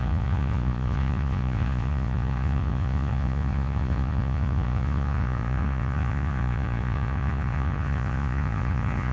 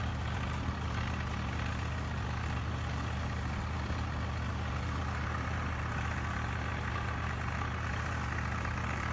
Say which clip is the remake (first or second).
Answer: first